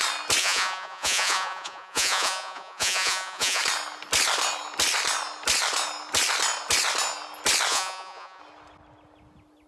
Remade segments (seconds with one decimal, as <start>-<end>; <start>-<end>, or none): 0.4-3.6; 7.7-8.4